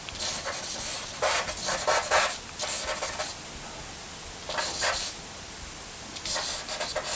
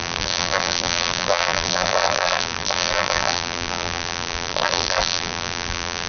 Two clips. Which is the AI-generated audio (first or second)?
second